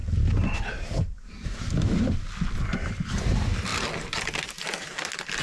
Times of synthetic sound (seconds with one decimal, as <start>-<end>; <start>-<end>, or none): none